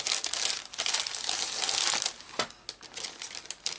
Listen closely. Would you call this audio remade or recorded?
recorded